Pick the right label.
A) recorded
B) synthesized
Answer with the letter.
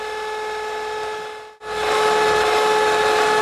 A